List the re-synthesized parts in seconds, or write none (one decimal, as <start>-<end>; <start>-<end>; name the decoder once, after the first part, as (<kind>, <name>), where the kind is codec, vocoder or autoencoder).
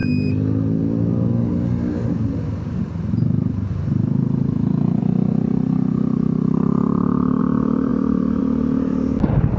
none